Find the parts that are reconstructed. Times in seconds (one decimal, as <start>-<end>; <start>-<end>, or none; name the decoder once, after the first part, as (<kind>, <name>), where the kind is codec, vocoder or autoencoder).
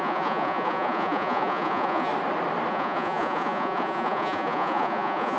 0.0-2.1 (vocoder, Vocos); 2.7-5.4